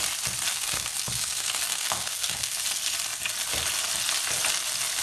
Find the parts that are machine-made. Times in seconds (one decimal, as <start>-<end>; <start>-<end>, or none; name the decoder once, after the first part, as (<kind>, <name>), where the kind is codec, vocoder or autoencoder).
0.5-2.6 (codec, SNAC)